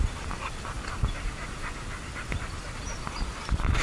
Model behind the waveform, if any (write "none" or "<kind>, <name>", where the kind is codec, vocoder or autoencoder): none